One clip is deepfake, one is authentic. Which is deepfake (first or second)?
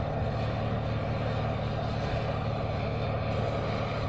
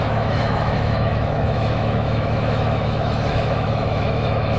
second